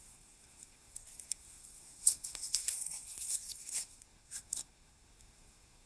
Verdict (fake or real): fake